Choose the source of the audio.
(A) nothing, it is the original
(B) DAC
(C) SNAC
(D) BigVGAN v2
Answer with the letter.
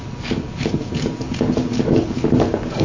B